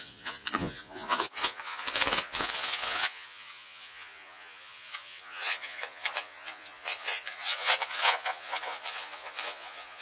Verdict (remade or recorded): remade